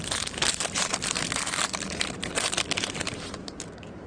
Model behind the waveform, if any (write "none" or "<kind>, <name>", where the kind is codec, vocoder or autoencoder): vocoder, BigVGAN v2